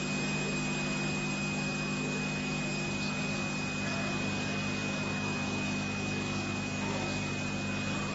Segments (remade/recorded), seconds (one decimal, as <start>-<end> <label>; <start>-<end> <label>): 0.0-1.4 recorded; 1.4-2.6 remade; 2.6-4.8 recorded; 4.8-7.3 remade; 7.3-8.1 recorded